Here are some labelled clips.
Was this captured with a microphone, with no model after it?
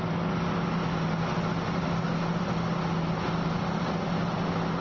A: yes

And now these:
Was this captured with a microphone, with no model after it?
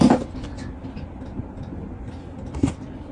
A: yes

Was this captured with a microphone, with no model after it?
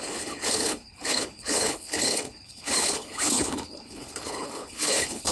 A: no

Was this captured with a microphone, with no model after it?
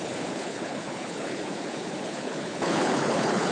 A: no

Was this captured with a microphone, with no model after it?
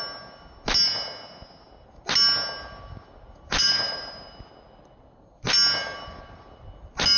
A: yes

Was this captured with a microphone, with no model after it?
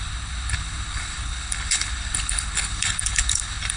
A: no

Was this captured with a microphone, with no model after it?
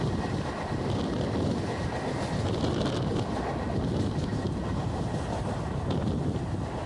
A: yes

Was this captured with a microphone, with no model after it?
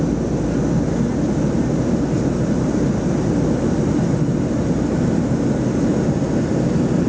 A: yes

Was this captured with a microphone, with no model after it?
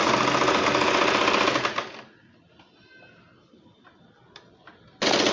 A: yes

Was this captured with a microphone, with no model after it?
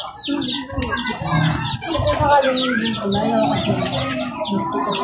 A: yes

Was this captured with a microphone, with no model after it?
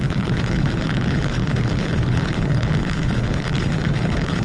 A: no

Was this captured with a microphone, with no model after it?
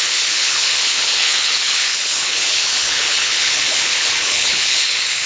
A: no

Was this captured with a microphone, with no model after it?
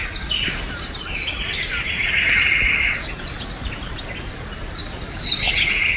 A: yes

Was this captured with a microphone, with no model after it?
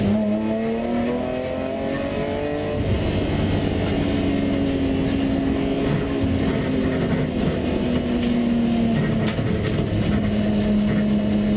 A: yes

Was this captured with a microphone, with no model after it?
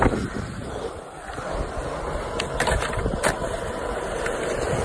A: yes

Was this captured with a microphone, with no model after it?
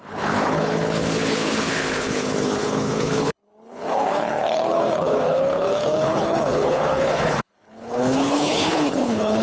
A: no